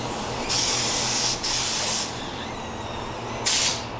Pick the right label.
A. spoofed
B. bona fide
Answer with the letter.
A